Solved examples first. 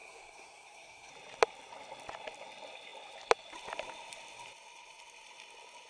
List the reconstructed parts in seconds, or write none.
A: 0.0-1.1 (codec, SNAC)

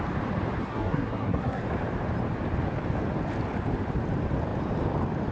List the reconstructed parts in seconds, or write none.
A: 0.6-1.6 (codec, SNAC)

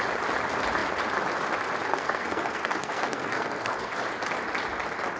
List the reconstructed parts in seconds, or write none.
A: 1.9-4.0 (codec, SNAC)